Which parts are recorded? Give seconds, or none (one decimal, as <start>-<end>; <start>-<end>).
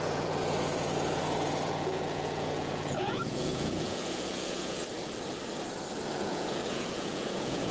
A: 4.8-6.1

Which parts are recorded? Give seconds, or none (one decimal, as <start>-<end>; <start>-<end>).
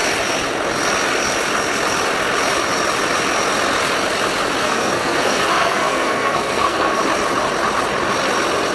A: 0.0-4.6; 7.0-8.7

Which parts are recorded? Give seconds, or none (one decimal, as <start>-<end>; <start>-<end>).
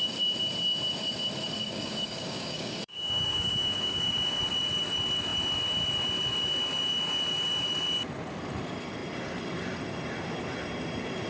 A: 0.0-1.6; 4.4-11.3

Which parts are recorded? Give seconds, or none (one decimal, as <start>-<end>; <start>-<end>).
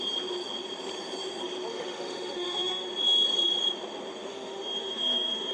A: 0.0-1.7; 2.9-4.3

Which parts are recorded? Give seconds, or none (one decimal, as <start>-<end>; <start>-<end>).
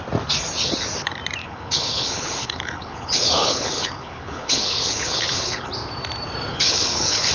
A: 0.0-1.4; 5.7-6.5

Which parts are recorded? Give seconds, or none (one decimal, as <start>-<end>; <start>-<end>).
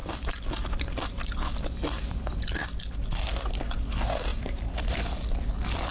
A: 0.0-4.3; 5.5-5.9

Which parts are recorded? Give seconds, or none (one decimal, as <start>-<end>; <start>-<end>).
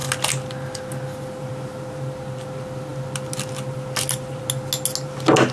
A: 0.0-5.5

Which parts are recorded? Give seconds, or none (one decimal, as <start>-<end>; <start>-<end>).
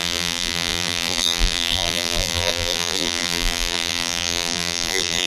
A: none